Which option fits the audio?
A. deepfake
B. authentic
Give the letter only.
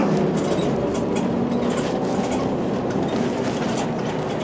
B